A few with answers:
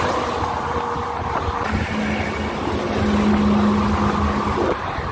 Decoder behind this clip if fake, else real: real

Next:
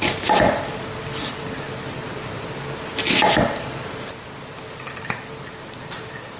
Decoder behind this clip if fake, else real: fake, vocoder, BigVGAN v2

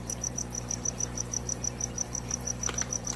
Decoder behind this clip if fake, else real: fake, vocoder, BigVGAN v2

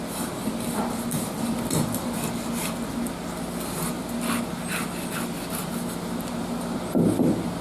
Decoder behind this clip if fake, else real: real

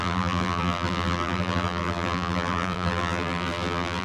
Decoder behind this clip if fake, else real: fake, vocoder, BigVGAN v2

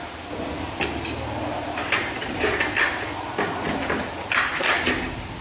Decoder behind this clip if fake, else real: real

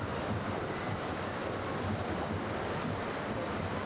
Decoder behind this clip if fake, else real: fake, vocoder, BigVGAN v2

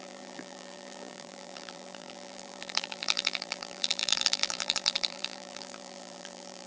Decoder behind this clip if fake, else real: fake, vocoder, BigVGAN v2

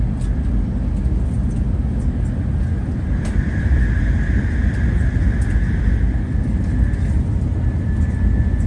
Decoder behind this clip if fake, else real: real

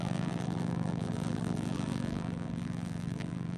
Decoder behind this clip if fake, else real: fake, vocoder, BigVGAN v2